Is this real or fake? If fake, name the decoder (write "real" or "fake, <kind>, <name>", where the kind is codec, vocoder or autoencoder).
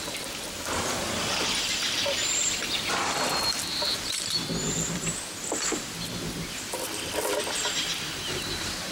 fake, vocoder, BigVGAN v2